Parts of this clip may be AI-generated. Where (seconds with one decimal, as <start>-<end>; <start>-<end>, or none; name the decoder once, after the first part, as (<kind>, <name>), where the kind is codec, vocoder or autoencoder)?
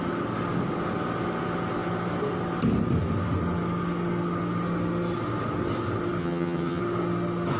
6.2-6.8 (vocoder, HiFi-GAN)